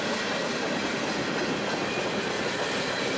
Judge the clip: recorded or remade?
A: recorded